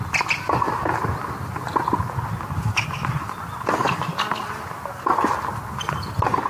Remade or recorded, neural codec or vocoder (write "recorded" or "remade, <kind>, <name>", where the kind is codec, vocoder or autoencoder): recorded